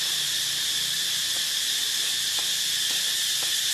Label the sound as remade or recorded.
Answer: recorded